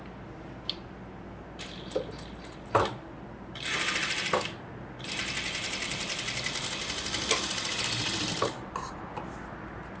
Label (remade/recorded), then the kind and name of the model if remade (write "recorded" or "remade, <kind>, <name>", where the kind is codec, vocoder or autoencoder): recorded